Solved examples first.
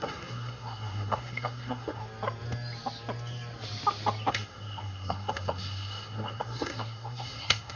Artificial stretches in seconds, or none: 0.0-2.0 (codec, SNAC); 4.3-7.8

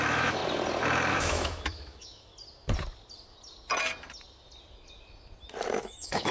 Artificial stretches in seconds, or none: 0.0-0.4 (autoencoder, DAC-VAE); 1.1-2.3; 5.8-6.3

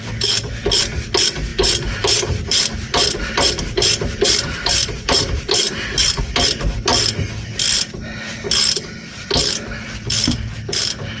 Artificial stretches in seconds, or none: 1.5-6.2 (vocoder, BigVGAN v2)

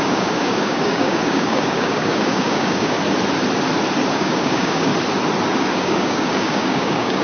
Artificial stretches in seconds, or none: 0.0-3.0 (codec, DAC); 4.1-4.9; 5.6-7.2

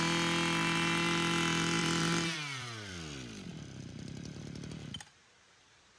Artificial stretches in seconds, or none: 1.8-2.9 (vocoder, BigVGAN v2); 3.5-4.4

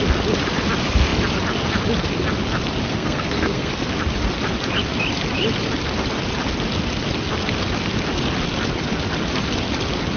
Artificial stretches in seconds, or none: 2.9-3.7 (codec, SNAC)

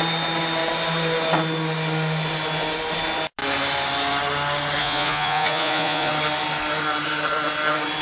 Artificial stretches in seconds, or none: 4.8-6.1 (vocoder, Vocos)

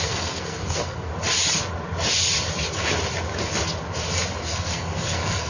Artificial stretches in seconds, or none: 0.0-1.1 (codec, SNAC); 4.4-5.5